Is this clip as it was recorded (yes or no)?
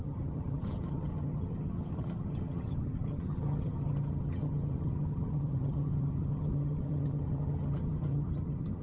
no